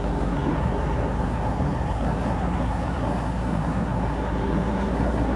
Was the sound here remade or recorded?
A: remade